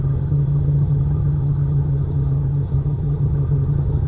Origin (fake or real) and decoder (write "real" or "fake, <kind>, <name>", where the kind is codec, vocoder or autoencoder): fake, vocoder, HiFi-GAN